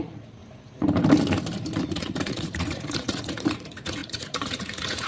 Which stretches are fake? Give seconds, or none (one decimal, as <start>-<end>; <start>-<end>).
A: 0.0-0.4; 1.8-5.1